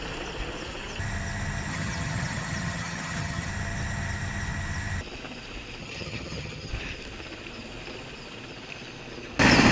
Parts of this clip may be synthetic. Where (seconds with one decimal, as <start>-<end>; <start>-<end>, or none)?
1.7-3.5; 5.8-6.7